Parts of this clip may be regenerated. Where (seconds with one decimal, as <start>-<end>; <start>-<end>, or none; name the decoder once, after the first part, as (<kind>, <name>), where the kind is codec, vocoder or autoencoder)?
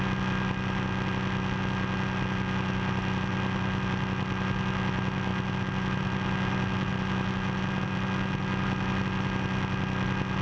none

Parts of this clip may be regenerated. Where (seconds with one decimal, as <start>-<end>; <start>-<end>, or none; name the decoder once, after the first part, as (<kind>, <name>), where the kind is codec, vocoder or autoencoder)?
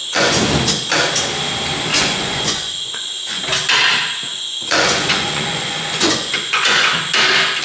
0.0-0.5 (vocoder, Vocos); 1.9-3.4; 4.3-6.9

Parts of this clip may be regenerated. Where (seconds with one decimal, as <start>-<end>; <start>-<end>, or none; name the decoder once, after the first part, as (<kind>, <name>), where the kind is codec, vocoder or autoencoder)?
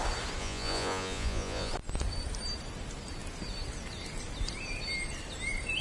0.4-1.7 (vocoder, Vocos)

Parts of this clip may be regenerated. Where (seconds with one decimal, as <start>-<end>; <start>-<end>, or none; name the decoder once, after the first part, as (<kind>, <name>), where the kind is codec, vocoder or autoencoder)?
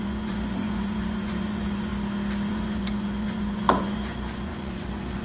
0.0-1.9 (vocoder, Vocos); 2.5-5.2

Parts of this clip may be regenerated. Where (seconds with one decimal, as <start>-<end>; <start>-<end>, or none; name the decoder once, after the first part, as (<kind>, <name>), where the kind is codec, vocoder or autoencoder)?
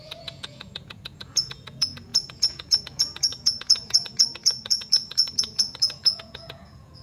0.0-7.0 (vocoder, Vocos)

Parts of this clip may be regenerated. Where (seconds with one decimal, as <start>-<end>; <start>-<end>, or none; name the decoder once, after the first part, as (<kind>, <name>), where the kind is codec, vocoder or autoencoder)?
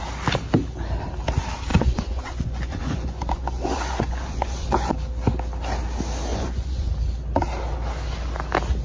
1.7-4.9 (vocoder, Vocos); 6.3-6.9